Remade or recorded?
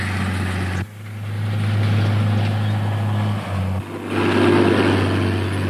recorded